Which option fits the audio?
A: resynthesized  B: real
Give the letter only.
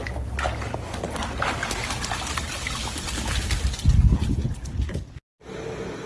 B